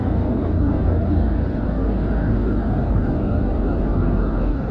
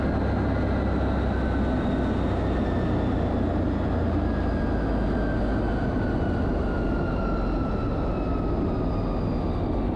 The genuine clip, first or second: second